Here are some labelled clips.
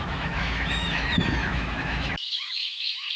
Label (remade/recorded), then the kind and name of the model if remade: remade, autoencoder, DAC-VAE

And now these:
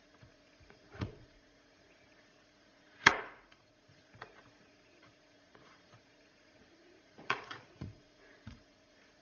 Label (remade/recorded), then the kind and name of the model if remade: remade, vocoder, Vocos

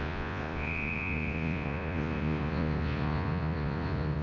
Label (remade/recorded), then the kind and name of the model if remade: remade, vocoder, Vocos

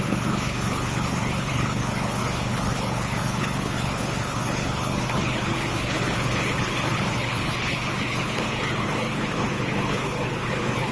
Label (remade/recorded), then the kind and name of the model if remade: remade, codec, HILCodec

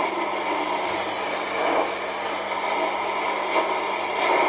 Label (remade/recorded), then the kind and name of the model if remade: recorded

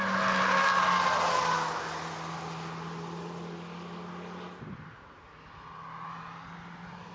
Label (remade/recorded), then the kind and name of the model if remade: recorded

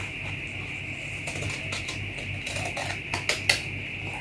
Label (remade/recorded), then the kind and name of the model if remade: recorded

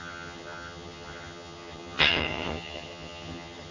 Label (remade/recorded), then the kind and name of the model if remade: remade, vocoder, HiFi-GAN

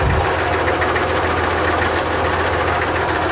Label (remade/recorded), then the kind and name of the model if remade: recorded